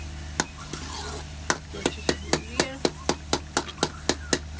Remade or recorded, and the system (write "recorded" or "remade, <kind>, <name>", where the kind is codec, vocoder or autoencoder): recorded